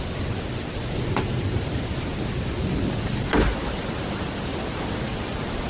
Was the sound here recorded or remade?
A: recorded